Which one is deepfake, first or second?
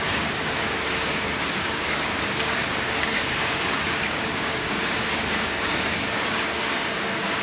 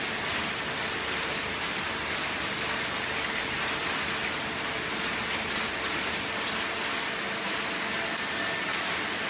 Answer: first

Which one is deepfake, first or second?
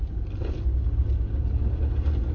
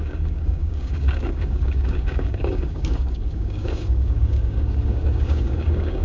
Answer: second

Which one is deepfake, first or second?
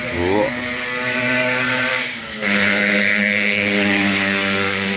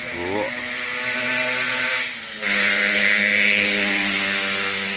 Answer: first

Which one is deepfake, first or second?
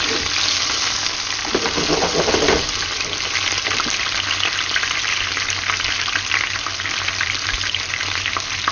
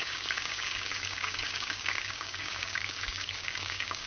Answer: second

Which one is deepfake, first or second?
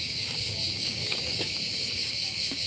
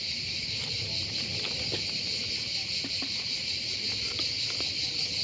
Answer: first